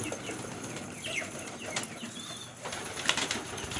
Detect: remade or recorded recorded